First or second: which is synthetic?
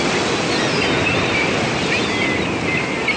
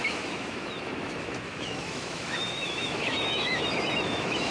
second